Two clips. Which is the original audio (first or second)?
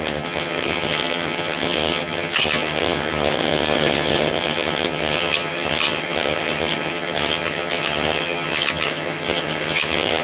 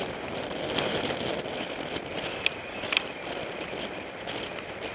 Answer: second